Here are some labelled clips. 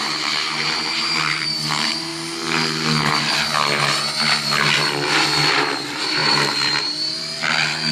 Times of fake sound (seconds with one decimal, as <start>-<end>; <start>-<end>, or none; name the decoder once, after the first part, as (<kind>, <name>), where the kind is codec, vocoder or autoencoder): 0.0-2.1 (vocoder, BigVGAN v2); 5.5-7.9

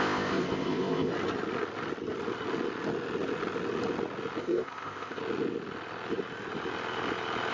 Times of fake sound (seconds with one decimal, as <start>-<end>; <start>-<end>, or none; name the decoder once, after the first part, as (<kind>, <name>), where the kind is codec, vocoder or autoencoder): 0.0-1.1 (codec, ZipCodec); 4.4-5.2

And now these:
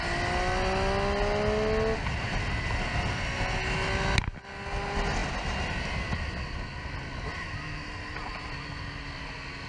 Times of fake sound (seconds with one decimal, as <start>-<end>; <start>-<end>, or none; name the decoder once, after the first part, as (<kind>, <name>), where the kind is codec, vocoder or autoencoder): none

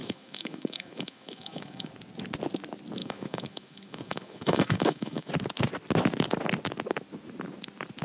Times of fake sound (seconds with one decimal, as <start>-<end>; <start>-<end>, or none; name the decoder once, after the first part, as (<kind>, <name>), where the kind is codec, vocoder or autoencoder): 0.0-1.9 (autoencoder, DAC-VAE); 3.0-5.3

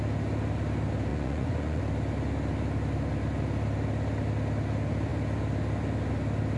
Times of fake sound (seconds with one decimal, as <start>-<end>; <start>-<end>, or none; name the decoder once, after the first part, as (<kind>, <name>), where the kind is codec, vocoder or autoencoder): 1.1-1.8 (vocoder, Vocos)

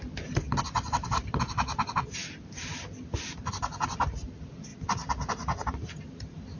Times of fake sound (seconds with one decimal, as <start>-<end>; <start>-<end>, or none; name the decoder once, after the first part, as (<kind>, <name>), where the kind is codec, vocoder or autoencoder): none

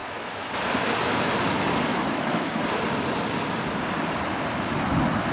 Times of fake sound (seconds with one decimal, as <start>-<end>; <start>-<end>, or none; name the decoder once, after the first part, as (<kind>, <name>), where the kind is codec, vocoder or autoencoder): 0.0-0.5 (autoencoder, DAC-VAE); 1.9-2.6

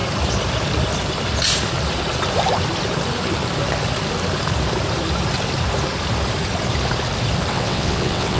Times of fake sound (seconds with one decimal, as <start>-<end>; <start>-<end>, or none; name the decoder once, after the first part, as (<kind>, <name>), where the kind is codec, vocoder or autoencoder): 7.5-8.4 (vocoder, WaveNeXt)